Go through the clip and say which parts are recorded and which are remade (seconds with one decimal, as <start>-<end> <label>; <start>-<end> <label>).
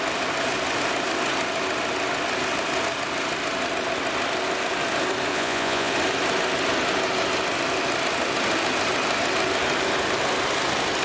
0.0-5.3 recorded; 5.3-5.9 remade; 5.9-11.0 recorded